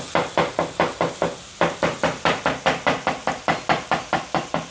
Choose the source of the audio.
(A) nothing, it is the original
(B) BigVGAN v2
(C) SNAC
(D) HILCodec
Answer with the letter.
A